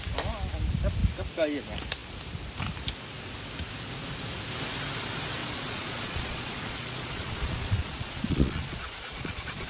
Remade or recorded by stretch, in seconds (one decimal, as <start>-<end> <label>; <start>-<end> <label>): 0.0-5.4 recorded; 5.4-9.7 remade